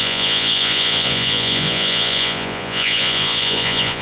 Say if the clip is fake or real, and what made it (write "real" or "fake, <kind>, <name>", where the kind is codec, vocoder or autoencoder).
fake, vocoder, Vocos